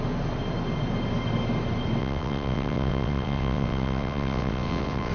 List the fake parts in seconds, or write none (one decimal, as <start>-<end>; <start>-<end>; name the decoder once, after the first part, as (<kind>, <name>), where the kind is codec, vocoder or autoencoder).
2.0-5.1 (vocoder, WaveNeXt)